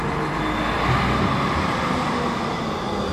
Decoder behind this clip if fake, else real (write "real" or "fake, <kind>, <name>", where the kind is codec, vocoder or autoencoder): real